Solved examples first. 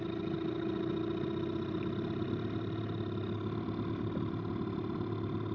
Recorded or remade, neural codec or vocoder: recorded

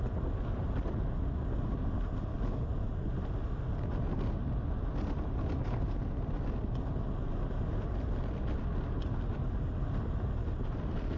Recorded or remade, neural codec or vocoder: recorded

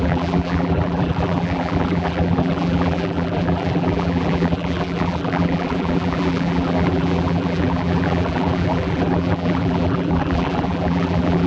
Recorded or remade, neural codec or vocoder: remade, vocoder, BigVGAN v2